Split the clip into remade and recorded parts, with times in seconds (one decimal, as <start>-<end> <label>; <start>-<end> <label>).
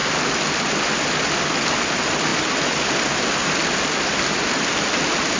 0.0-5.4 recorded